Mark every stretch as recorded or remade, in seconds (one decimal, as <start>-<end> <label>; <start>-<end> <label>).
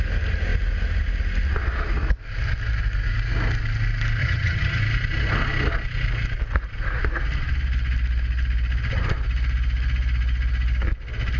0.0-4.2 recorded; 4.2-4.8 remade; 4.8-11.4 recorded